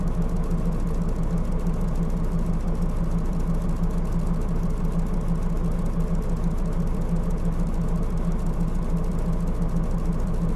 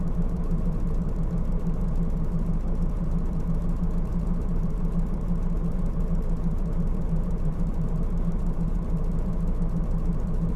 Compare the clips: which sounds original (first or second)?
first